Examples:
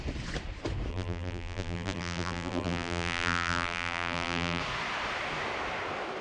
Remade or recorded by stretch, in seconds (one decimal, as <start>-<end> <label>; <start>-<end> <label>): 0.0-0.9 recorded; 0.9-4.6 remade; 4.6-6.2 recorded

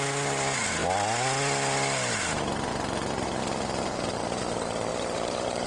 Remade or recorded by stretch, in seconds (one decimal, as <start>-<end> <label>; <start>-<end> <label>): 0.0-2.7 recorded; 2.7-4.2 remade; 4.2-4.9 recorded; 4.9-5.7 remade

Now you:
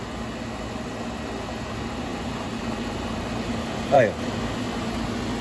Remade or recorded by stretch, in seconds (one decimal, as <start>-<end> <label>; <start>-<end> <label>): 0.0-2.1 recorded; 2.1-4.0 remade; 4.0-5.4 recorded

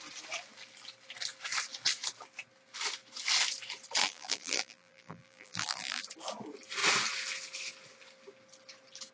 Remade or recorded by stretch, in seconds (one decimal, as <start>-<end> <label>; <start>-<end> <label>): 0.0-4.0 recorded; 4.0-6.0 remade; 6.0-9.1 recorded

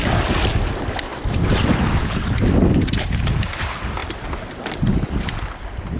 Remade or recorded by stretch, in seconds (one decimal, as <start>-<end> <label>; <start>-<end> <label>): 0.0-1.1 recorded; 1.1-2.9 remade; 2.9-4.0 recorded; 4.0-5.1 remade; 5.1-6.0 recorded

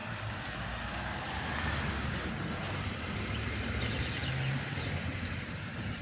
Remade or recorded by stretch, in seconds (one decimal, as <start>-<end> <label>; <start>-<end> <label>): 0.0-4.2 remade; 4.2-5.1 recorded; 5.1-6.0 remade

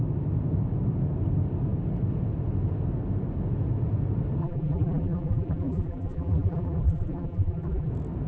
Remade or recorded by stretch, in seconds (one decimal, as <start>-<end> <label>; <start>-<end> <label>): 0.0-4.4 recorded; 4.4-7.9 remade; 7.9-8.3 recorded

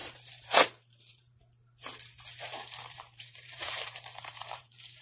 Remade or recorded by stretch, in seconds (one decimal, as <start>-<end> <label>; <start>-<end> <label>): 0.0-1.4 remade; 1.4-2.5 recorded; 2.5-5.0 remade